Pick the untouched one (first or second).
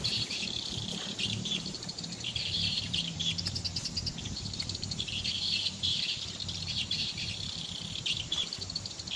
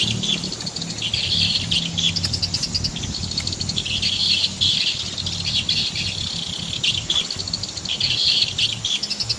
second